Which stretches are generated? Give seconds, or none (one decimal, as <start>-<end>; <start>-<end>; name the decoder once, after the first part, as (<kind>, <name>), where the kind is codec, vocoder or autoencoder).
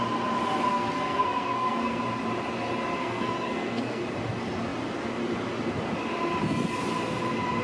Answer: 0.7-2.0 (codec, SNAC); 3.0-4.0